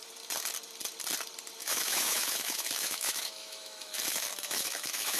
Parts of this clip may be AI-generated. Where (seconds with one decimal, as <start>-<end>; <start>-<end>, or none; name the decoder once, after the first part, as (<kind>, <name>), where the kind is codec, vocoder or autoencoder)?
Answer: 1.6-5.2 (autoencoder, DAC-VAE)